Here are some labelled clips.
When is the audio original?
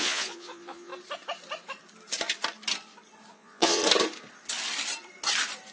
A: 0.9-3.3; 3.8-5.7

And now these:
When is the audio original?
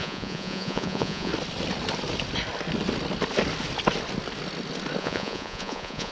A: 1.3-5.0